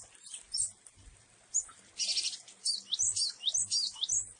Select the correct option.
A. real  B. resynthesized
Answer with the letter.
A